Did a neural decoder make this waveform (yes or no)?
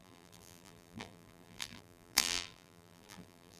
yes